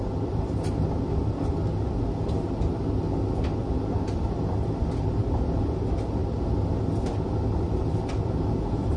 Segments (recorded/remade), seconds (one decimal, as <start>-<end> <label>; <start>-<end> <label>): 0.0-9.0 recorded

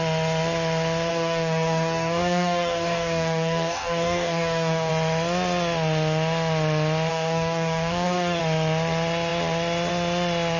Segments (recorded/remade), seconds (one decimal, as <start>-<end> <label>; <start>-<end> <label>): 0.0-1.1 recorded; 1.1-4.9 remade; 4.9-7.1 recorded; 7.1-8.4 remade; 8.4-10.6 recorded

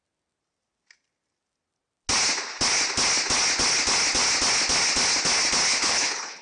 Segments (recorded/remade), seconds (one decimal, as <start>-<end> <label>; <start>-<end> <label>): 0.0-5.7 recorded; 5.7-6.4 remade

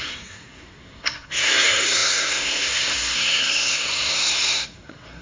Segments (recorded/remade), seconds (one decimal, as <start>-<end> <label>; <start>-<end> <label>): 0.0-5.2 remade

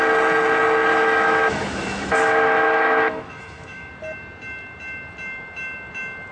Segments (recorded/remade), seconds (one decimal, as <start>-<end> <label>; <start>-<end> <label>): 0.0-0.9 recorded; 0.9-3.9 remade; 3.9-6.3 recorded